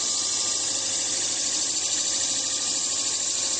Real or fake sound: real